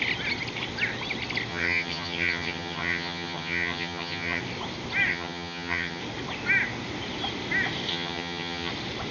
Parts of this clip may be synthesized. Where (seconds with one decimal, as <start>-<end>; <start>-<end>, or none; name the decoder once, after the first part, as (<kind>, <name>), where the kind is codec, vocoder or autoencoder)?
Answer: 1.5-4.4 (vocoder, HiFi-GAN); 5.1-6.0; 7.9-8.7